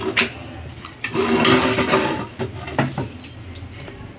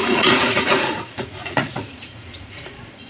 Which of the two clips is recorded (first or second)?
first